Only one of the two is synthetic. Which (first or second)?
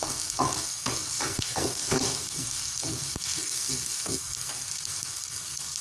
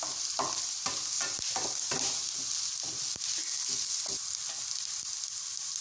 first